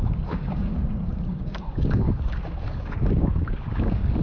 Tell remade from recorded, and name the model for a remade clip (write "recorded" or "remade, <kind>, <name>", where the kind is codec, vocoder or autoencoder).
remade, codec, DAC